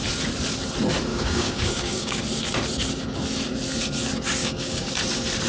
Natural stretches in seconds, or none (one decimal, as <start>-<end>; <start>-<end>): 0.0-1.1; 2.2-4.4; 4.9-5.5